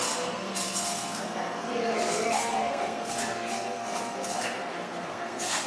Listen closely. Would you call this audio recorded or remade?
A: remade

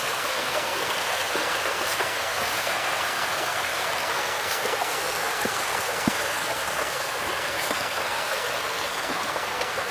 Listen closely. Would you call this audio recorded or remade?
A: remade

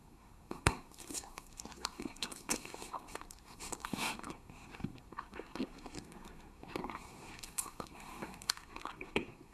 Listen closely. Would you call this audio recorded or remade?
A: remade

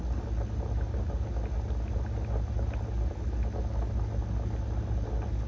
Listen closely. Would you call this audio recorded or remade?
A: recorded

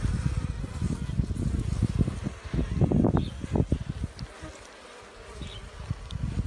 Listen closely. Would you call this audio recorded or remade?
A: recorded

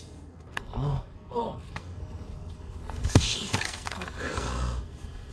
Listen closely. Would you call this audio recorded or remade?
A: remade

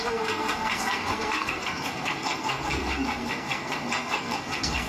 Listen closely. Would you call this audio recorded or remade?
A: remade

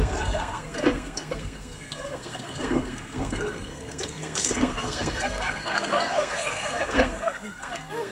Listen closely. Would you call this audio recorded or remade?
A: remade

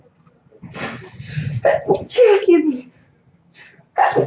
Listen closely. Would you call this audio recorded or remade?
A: recorded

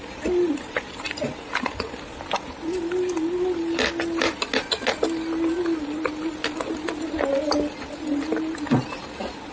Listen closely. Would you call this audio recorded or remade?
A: recorded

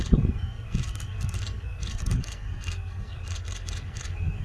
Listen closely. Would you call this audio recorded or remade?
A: remade